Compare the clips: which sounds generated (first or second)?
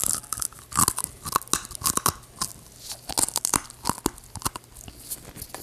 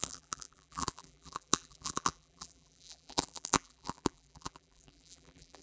second